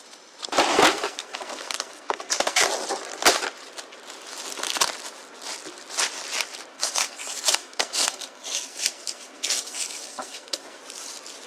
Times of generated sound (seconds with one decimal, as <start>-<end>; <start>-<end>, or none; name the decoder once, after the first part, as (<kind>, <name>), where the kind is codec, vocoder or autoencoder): 0.7-2.6 (codec, SNAC); 6.7-10.8